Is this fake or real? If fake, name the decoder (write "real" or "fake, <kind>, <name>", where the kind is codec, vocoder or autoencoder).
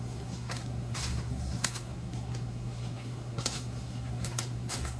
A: fake, codec, SNAC